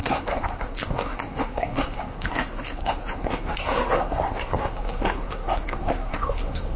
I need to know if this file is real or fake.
fake